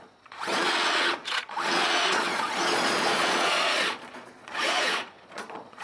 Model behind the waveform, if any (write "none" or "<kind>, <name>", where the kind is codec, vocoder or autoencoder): vocoder, Vocos